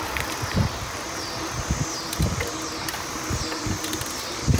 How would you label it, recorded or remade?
recorded